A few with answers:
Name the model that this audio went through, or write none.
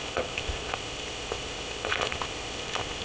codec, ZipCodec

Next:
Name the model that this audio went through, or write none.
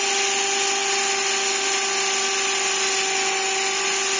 none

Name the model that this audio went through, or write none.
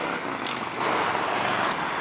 none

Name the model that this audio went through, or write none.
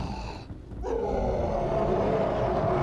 none